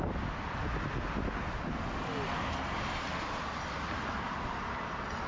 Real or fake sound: real